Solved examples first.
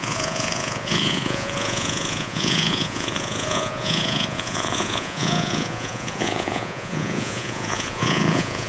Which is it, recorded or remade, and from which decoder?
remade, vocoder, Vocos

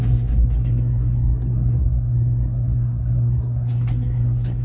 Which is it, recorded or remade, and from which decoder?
remade, codec, SNAC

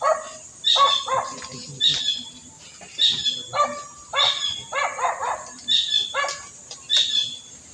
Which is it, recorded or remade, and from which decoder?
recorded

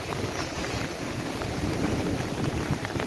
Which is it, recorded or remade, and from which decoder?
remade, vocoder, BigVGAN v2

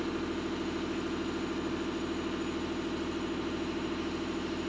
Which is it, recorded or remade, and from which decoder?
recorded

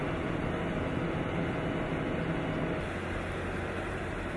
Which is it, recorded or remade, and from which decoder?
recorded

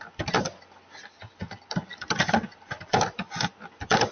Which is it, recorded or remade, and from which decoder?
remade, vocoder, BigVGAN v2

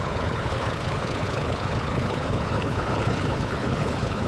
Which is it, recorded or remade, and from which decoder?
remade, codec, HILCodec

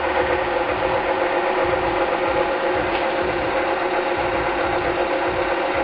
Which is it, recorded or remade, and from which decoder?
recorded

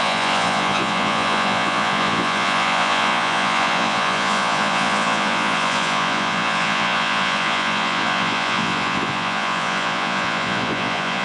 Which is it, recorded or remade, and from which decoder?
remade, vocoder, Vocos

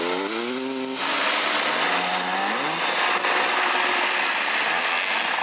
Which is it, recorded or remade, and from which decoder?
recorded